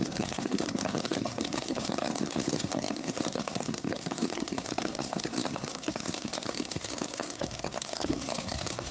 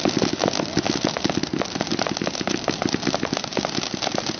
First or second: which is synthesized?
first